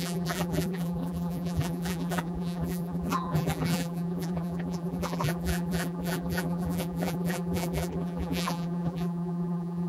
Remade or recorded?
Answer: remade